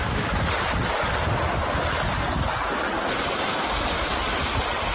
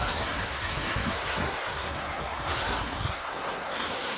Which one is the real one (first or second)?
first